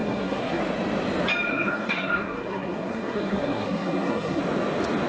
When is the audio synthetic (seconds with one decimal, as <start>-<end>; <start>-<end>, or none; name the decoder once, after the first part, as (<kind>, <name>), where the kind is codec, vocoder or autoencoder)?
0.0-0.6 (codec, SNAC); 1.5-4.4